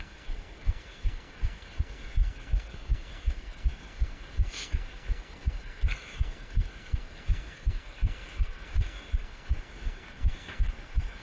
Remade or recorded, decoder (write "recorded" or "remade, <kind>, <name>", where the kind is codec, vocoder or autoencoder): remade, codec, SNAC